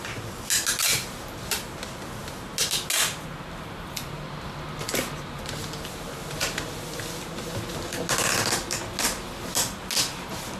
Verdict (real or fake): real